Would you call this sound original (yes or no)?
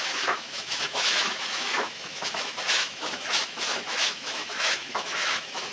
no